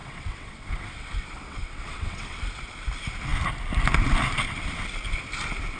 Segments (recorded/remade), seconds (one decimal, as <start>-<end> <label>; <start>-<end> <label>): 0.0-2.4 remade; 2.4-5.8 recorded

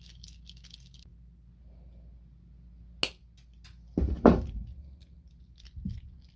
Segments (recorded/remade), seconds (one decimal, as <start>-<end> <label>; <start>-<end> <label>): 0.0-6.4 recorded

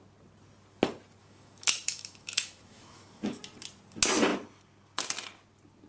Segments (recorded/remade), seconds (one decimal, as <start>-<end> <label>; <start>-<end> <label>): 0.0-1.2 recorded; 1.2-3.4 remade; 3.4-5.9 recorded